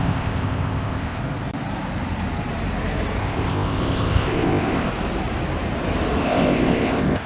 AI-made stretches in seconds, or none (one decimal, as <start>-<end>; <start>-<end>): 0.0-1.2; 3.2-4.9; 6.2-7.3